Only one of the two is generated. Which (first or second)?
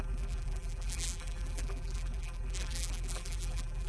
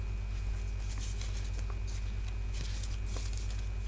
first